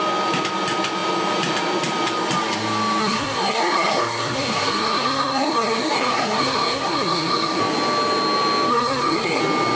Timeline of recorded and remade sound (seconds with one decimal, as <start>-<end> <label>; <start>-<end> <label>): 0.0-3.0 recorded; 3.0-7.6 remade; 7.6-8.7 recorded; 8.7-9.4 remade; 9.4-9.8 recorded